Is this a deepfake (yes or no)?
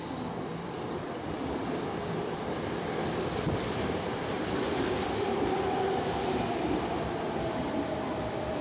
yes